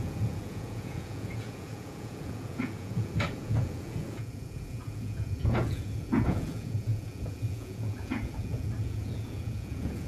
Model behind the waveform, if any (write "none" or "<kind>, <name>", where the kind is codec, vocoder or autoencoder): vocoder, Vocos